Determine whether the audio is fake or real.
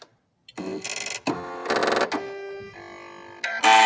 real